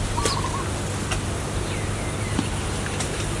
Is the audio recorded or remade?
recorded